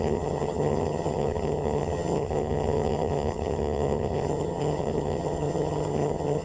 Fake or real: fake